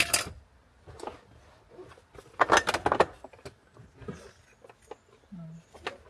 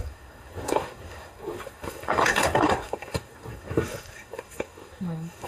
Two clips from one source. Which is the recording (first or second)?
first